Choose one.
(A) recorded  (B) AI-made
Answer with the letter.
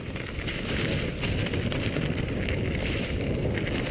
A